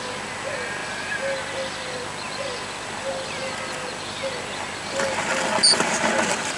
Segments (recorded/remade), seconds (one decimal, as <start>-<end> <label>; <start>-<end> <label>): 0.0-6.6 recorded